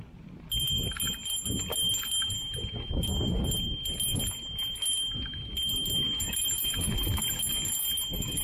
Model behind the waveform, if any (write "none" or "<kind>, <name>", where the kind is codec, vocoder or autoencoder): none